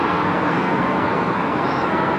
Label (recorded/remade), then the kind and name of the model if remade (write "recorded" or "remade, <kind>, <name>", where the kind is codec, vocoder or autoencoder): remade, codec, SNAC